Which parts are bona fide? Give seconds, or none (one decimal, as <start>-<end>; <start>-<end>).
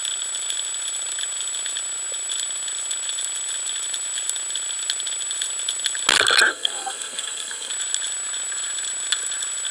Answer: 0.0-6.5; 7.7-9.7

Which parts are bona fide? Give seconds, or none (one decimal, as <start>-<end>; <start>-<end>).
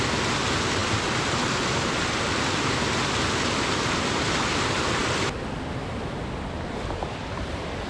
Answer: 0.0-7.9